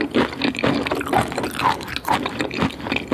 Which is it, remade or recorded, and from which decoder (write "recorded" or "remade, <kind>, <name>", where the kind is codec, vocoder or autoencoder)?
recorded